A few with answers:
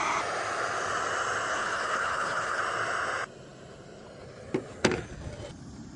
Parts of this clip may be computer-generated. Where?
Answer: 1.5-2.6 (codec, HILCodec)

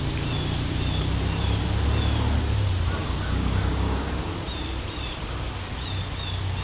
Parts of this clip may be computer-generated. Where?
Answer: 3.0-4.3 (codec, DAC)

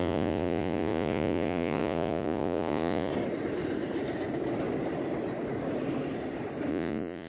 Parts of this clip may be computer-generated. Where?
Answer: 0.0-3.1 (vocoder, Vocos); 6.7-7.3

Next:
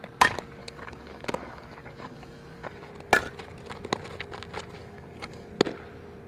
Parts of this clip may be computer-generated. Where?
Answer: 0.6-2.9 (codec, DAC); 4.8-5.5

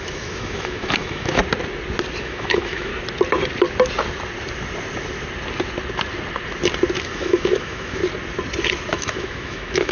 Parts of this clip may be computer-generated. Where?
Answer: 0.0-1.4 (autoencoder, DAC-VAE); 2.2-2.9; 7.0-8.0; 8.9-9.9

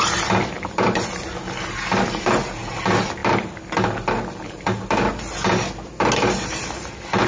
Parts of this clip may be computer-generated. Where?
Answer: none

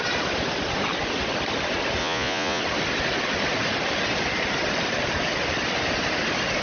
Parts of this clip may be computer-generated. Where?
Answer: 2.0-2.6 (vocoder, Vocos)

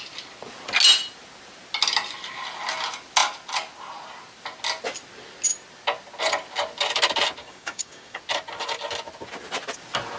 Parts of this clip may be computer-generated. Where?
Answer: 7.4-8.2 (codec, DAC)